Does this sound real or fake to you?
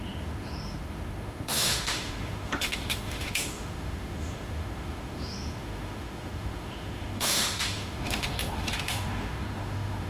fake